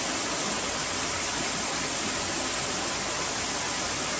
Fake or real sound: real